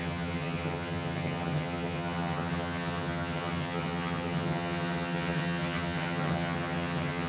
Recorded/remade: remade